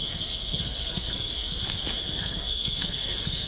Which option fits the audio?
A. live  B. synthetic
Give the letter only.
B